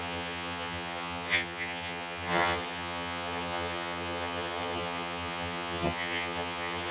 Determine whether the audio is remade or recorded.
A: remade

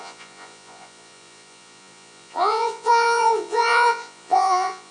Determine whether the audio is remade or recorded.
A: remade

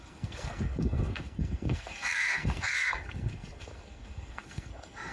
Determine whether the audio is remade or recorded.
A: remade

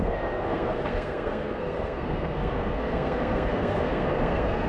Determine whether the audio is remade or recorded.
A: remade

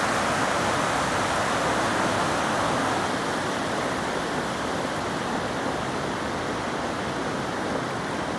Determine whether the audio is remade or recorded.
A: recorded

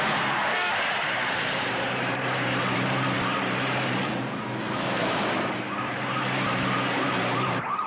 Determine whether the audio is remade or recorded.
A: remade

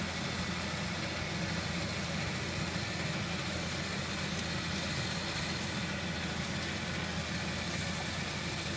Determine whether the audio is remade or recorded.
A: recorded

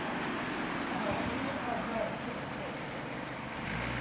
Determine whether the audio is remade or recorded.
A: recorded